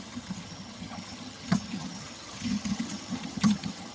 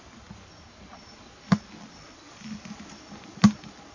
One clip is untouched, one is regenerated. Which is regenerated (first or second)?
first